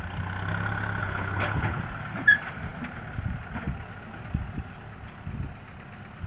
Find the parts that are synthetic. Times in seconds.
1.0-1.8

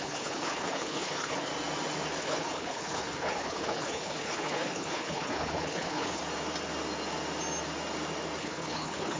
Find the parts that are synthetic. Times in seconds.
0.0-1.5; 2.2-6.2; 8.4-9.2